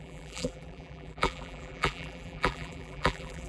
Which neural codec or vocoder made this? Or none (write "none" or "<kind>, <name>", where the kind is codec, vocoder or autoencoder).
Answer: vocoder, BigVGAN v2